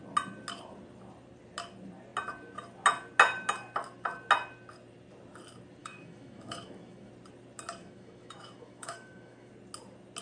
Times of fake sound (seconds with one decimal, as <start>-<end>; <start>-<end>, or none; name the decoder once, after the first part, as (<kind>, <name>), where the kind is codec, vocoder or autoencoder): 5.8-7.1 (autoencoder, DAC-VAE); 7.8-9.5